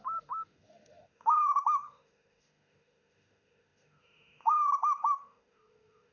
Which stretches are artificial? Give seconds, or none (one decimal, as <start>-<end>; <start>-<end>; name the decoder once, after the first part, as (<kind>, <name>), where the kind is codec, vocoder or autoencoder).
0.0-6.1 (autoencoder, DAC-VAE)